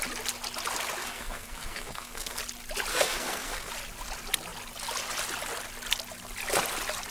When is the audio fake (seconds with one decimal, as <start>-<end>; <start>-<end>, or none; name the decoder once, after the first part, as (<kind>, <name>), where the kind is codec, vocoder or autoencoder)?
1.0-2.4 (codec, SNAC); 2.9-3.7